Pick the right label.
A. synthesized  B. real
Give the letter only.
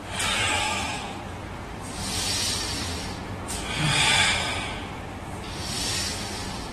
B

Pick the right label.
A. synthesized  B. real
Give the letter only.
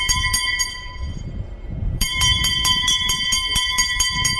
A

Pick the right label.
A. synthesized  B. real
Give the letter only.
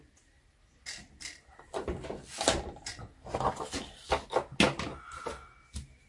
B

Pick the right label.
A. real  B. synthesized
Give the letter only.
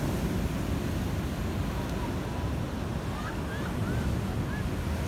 A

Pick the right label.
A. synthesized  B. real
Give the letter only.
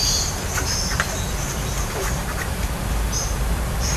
A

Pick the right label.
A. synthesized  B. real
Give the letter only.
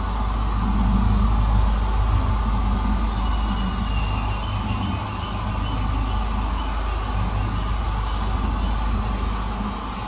B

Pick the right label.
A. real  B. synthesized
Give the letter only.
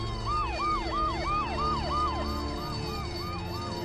A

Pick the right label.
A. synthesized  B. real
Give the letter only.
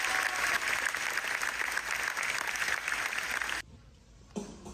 B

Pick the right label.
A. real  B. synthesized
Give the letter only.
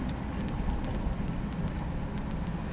A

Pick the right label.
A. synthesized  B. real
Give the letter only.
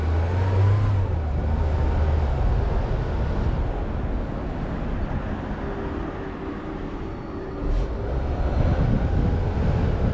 B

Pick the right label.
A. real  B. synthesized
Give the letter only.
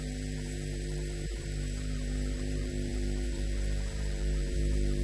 B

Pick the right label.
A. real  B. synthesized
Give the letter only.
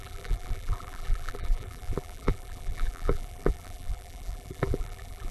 B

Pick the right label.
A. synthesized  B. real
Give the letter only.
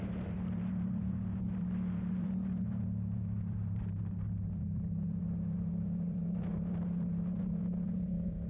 A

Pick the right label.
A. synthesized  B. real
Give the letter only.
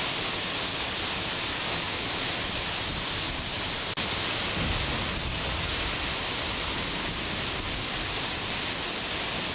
B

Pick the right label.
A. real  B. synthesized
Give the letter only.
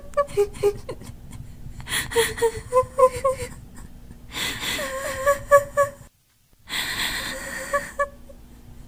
A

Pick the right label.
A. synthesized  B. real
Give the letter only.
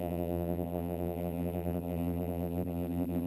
A